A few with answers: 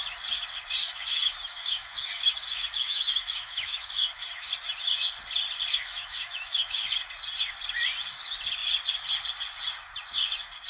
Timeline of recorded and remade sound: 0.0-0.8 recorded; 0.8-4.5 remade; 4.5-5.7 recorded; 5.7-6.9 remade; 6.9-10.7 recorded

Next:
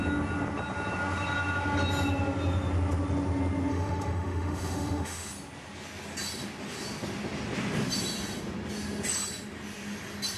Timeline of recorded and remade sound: 0.0-3.7 recorded; 3.7-5.3 remade; 5.3-10.4 recorded

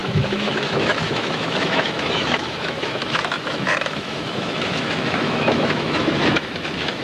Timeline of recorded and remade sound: 0.0-7.0 remade

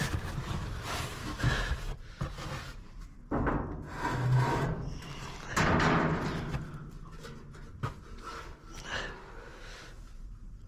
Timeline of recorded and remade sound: 0.0-1.2 recorded; 1.2-1.8 remade; 1.8-10.7 recorded

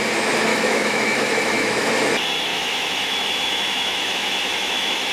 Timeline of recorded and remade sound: 0.0-0.5 recorded; 0.5-1.9 remade; 1.9-2.5 recorded; 2.5-5.1 remade

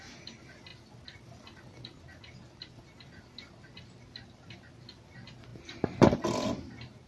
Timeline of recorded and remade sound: 0.0-7.1 recorded